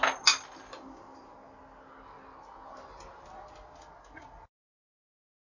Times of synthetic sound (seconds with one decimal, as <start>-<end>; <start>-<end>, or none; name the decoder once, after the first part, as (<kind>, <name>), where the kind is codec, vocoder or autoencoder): none

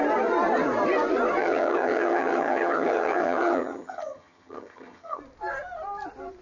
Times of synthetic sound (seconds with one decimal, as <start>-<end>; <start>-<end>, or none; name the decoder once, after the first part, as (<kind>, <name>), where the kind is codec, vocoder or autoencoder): 1.4-5.2 (vocoder, HiFi-GAN)

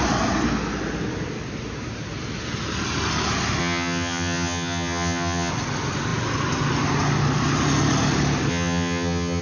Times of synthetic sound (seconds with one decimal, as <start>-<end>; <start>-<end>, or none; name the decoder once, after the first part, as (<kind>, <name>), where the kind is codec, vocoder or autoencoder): 3.6-5.5 (vocoder, HiFi-GAN); 8.5-9.4

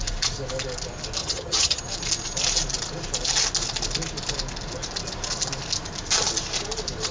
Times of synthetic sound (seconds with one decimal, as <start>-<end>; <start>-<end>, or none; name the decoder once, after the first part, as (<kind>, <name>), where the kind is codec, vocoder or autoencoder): 1.2-1.8 (vocoder, HiFi-GAN)

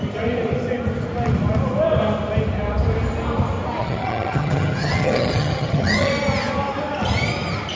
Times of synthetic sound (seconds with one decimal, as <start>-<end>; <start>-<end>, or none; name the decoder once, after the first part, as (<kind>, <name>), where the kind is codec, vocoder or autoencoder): 3.8-6.1 (vocoder, HiFi-GAN)

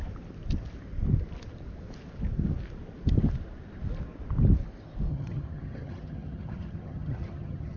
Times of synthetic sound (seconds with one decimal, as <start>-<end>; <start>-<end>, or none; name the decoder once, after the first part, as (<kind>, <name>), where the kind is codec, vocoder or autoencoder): 5.1-7.8 (vocoder, HiFi-GAN)

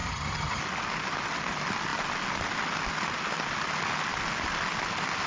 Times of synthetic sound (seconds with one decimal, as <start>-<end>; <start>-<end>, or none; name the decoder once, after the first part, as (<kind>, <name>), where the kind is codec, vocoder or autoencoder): 0.0-0.6 (vocoder, HiFi-GAN)

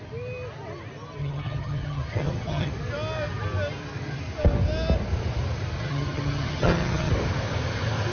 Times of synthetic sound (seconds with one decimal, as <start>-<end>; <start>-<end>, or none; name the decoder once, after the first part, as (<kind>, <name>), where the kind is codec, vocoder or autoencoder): 1.2-2.7 (vocoder, HiFi-GAN); 5.8-7.1